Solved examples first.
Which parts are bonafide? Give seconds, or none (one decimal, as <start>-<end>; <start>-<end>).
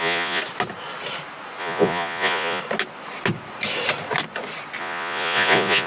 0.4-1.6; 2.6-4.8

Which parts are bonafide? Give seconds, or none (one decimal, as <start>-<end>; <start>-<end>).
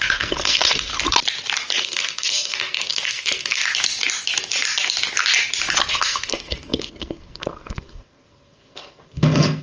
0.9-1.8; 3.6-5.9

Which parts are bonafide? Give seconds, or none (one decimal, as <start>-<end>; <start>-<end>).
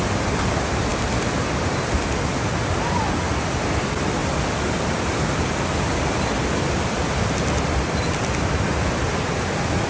0.0-4.2; 9.1-9.9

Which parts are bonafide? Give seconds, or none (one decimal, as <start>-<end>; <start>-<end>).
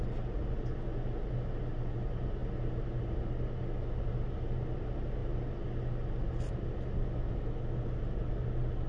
0.0-8.9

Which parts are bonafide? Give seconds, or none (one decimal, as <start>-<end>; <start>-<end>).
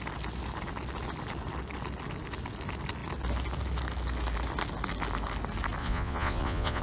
0.0-5.8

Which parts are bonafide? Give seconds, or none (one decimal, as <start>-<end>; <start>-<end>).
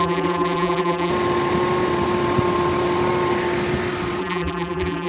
1.1-4.2